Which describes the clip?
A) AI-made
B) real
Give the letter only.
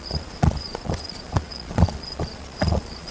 A